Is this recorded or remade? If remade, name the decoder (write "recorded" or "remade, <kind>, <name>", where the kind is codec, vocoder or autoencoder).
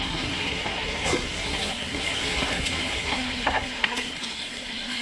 remade, codec, SNAC